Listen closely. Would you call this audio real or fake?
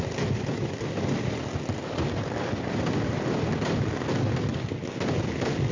real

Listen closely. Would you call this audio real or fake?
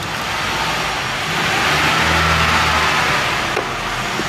real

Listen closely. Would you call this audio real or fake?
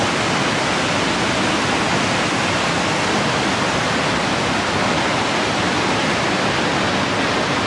real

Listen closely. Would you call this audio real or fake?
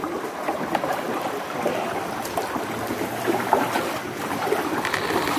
real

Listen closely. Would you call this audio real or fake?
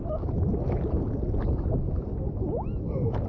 real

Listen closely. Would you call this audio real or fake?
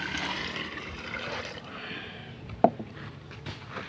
real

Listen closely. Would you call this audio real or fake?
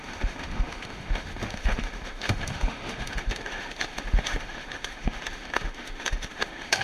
fake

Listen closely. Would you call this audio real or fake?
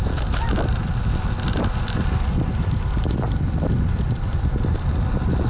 real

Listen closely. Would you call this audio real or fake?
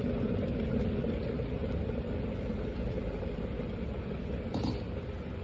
real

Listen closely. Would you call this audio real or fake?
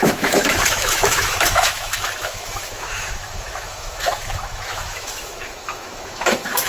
fake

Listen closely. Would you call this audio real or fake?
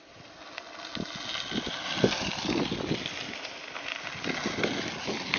real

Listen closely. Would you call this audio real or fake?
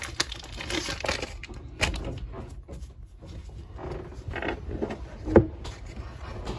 real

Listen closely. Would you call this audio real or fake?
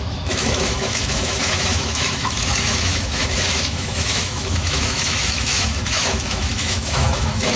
fake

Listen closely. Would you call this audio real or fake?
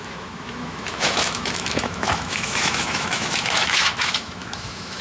fake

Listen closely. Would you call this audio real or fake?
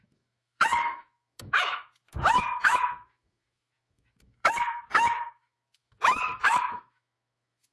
fake